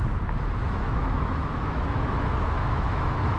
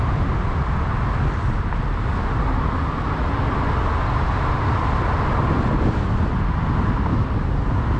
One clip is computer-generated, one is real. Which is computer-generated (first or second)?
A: first